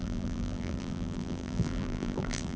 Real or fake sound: fake